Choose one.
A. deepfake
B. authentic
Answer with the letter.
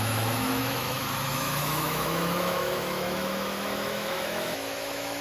A